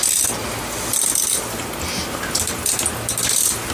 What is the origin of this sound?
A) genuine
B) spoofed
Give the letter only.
A